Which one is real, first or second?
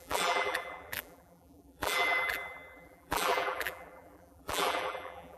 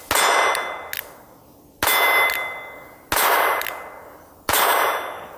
second